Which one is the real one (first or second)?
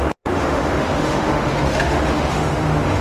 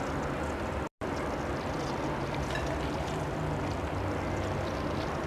second